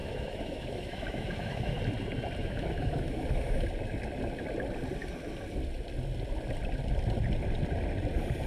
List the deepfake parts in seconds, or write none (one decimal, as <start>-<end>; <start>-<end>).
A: 0.0-1.8; 2.4-3.6